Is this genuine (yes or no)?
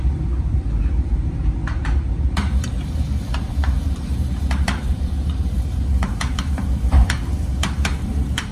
no